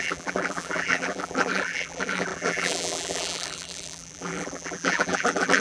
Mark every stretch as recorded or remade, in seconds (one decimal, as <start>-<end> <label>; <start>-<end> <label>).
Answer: 0.0-5.6 remade